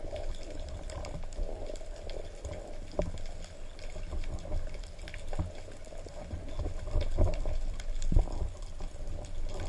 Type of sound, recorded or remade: recorded